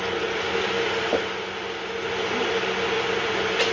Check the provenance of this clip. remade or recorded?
recorded